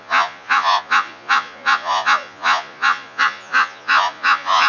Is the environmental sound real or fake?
fake